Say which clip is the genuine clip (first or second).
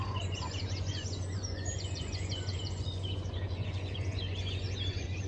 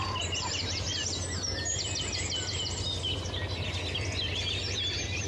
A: second